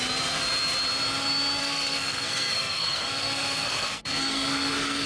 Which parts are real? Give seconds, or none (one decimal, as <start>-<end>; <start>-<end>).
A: 0.0-1.6